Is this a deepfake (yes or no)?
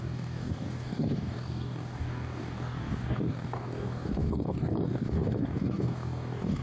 yes